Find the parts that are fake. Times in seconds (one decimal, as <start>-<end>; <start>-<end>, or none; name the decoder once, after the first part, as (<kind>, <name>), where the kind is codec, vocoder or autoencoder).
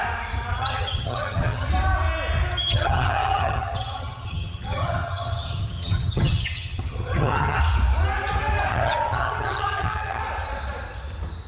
0.5-1.7 (vocoder, HiFi-GAN); 2.6-7.6; 8.7-10.2